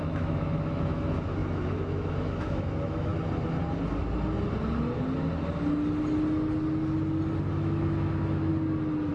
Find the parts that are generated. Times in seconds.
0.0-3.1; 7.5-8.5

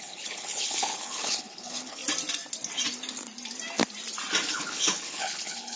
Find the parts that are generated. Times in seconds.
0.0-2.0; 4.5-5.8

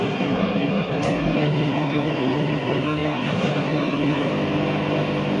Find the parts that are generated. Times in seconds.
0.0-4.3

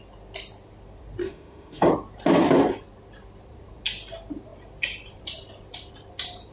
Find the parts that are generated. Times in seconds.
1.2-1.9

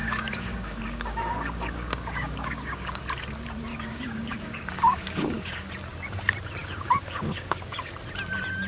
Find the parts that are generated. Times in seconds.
0.0-3.0; 3.7-5.7; 6.6-7.9